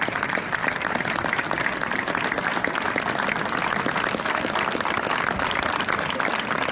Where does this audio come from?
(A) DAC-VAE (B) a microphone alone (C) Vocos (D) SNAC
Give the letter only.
B